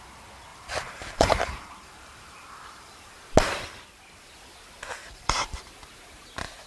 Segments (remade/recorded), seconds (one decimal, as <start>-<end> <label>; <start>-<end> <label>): 0.0-0.5 recorded; 0.5-3.1 remade; 3.1-5.0 recorded; 5.0-5.6 remade; 5.6-6.7 recorded